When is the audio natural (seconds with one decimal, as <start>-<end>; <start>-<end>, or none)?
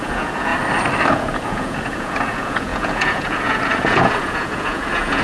0.5-1.1